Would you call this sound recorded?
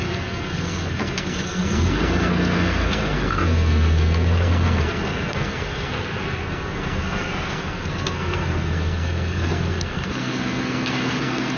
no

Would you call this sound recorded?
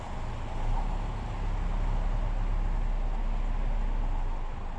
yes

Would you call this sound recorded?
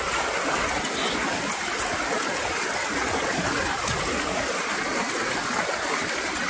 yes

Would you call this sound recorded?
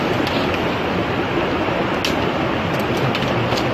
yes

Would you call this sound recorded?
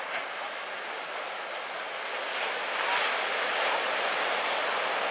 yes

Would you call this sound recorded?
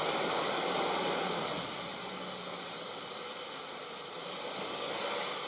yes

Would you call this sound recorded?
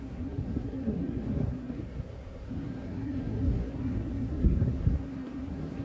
no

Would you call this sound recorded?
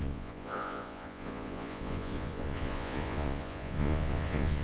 no